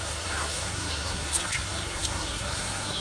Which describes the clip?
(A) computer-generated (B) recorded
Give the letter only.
A